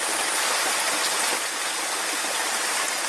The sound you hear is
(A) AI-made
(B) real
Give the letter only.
B